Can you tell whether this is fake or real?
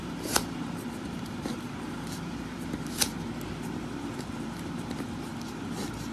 fake